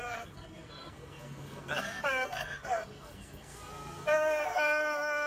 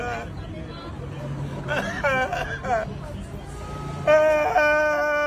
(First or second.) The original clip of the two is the second